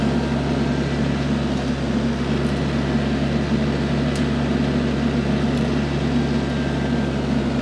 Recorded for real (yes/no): yes